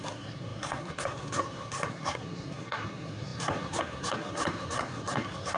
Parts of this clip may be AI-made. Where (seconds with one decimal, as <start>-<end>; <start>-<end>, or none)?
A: 0.0-5.6